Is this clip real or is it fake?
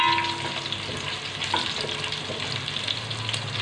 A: real